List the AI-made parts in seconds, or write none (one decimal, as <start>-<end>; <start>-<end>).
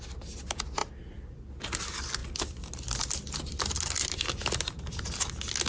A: none